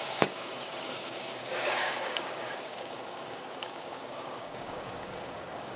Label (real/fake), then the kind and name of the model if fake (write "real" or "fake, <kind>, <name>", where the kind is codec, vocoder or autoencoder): fake, codec, DAC